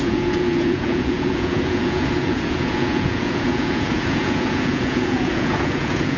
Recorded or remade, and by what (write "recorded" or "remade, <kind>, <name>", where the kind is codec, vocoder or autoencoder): remade, vocoder, Vocos